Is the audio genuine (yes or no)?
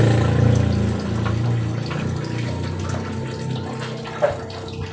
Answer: yes